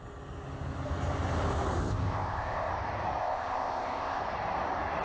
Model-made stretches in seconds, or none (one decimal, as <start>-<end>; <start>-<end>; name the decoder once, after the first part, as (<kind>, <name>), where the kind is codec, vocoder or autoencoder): 1.8-2.7 (codec, ZipCodec); 3.2-4.2